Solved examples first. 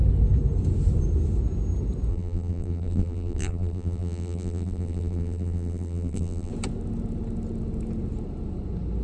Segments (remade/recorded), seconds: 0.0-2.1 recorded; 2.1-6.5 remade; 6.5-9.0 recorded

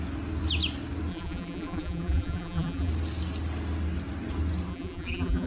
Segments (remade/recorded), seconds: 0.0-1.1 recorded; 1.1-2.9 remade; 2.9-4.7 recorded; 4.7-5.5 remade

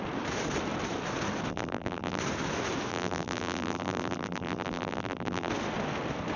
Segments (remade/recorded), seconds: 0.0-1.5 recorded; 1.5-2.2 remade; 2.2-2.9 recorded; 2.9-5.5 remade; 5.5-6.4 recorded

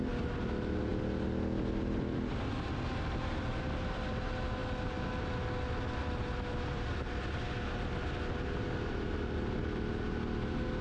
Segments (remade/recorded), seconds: 0.0-10.8 recorded

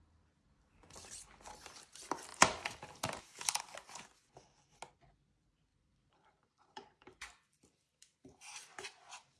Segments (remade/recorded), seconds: 0.0-2.3 recorded; 2.3-3.6 remade; 3.6-5.7 recorded; 5.7-9.4 remade

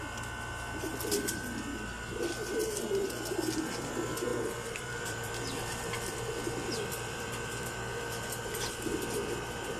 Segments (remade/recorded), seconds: 0.0-4.3 recorded; 4.3-8.7 remade; 8.7-9.8 recorded

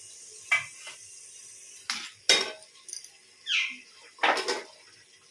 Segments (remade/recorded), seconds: 0.0-5.3 recorded